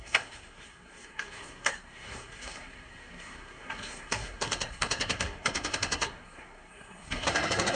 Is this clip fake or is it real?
fake